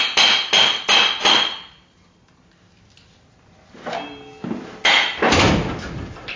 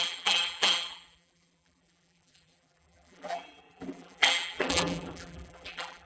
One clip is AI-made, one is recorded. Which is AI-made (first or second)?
second